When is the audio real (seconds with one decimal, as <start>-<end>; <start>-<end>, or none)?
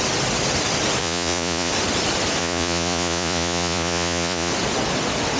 0.0-1.0; 1.7-2.4; 4.5-5.4